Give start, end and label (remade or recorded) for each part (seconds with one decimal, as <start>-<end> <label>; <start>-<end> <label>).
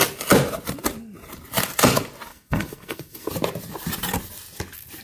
0.0-2.3 recorded; 2.3-3.3 remade; 3.3-5.0 recorded